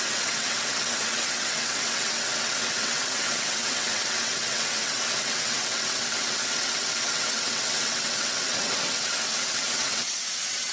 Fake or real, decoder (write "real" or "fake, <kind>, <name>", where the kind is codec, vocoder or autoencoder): fake, vocoder, WaveNeXt